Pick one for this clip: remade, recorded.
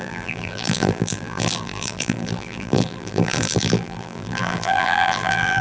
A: remade